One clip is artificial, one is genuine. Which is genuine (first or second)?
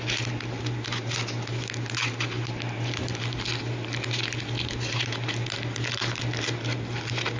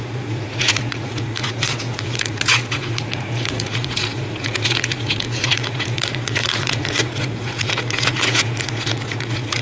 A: first